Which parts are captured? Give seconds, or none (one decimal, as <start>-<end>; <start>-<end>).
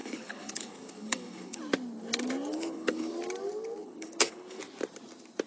1.6-2.5; 3.1-3.8; 4.6-5.5